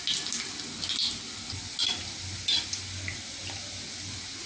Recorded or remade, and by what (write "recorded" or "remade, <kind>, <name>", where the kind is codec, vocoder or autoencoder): recorded